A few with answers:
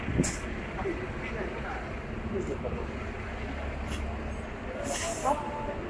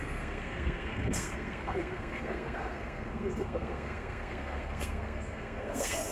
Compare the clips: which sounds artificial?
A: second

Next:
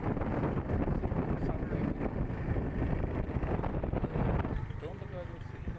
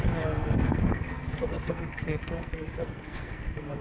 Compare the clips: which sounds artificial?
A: second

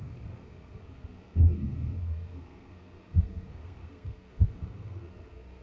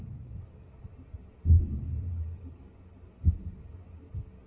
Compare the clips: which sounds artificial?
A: first